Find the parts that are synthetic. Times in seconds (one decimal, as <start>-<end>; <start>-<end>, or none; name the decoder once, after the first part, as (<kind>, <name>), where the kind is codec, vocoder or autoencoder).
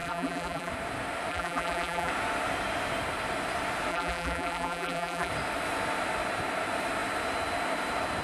0.0-0.7 (vocoder, BigVGAN v2); 1.3-2.1; 3.9-5.3